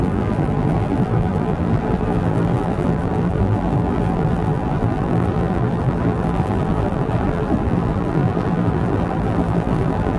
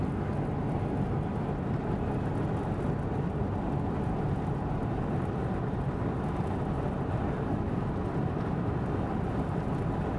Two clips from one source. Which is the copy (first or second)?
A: first